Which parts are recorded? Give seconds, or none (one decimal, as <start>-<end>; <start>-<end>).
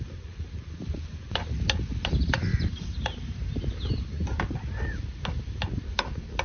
0.0-2.5; 3.9-6.4